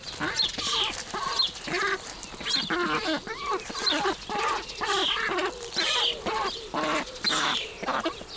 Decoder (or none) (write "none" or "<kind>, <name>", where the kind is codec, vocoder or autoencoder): none